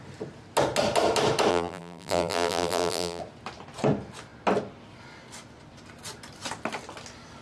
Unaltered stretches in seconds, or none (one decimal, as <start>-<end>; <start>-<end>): 0.0-1.5; 3.2-7.4